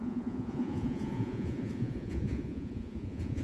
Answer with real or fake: fake